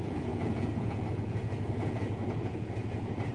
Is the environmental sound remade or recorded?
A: remade